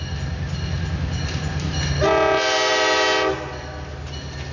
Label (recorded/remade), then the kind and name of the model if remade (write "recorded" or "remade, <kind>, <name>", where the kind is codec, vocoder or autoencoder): recorded